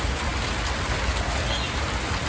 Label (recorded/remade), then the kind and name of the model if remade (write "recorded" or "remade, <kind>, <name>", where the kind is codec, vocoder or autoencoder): recorded